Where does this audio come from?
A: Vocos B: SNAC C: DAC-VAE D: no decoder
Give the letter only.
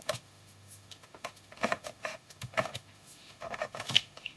C